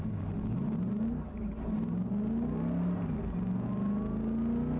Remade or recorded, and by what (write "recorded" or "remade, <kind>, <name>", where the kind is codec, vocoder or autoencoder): recorded